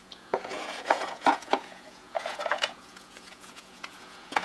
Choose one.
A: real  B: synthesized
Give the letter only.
B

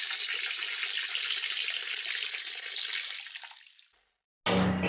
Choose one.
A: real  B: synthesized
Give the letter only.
A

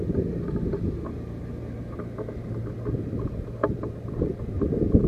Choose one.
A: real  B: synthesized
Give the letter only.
A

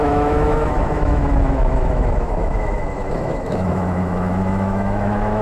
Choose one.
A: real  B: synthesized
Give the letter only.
B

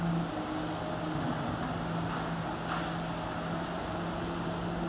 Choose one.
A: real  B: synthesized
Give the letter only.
A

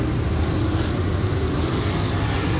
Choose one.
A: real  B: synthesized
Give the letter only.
A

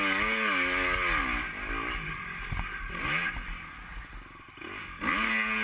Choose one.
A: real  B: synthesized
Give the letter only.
A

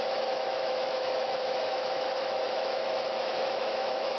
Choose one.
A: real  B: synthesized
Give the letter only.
B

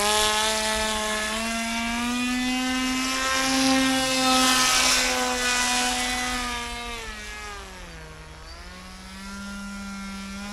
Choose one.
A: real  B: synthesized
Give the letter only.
A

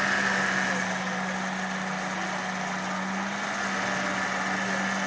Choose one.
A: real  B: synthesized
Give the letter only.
A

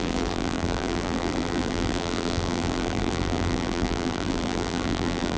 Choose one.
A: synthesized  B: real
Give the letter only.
A